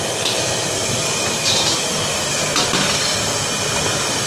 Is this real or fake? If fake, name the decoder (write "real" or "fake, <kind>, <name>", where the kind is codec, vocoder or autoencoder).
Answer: real